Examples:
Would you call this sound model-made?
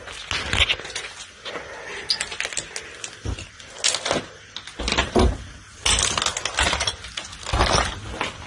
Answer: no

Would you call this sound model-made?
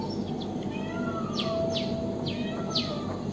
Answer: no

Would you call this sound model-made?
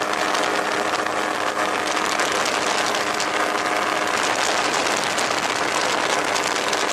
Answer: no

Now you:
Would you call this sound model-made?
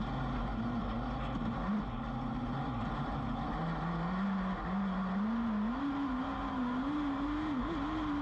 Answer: no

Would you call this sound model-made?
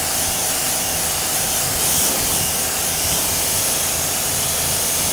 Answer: yes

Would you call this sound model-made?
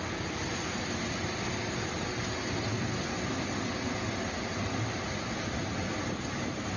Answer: no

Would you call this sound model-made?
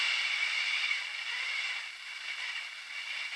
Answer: no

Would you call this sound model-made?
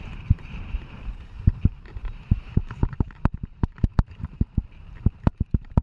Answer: yes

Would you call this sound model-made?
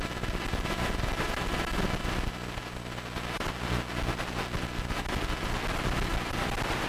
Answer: no